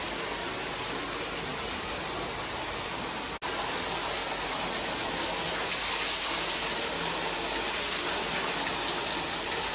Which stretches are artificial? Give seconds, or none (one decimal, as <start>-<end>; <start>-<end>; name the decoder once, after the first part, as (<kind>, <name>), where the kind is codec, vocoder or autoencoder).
4.2-5.1 (vocoder, BigVGAN v2)